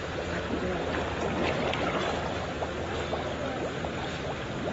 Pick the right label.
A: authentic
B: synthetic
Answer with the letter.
A